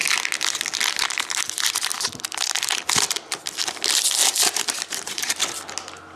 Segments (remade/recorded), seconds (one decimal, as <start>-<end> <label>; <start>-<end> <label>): 0.0-4.2 recorded; 4.2-5.4 remade; 5.4-6.2 recorded